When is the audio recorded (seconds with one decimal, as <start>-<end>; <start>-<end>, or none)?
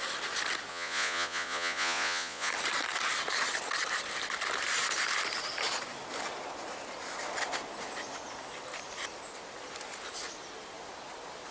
0.0-0.7; 2.5-11.5